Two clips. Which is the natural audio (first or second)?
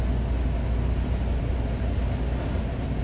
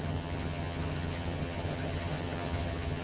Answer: first